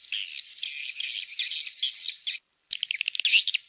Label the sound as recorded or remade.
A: recorded